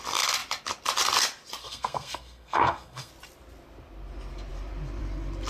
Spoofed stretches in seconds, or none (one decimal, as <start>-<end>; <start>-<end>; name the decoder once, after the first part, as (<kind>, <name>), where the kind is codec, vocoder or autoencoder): 1.6-3.1 (codec, SNAC)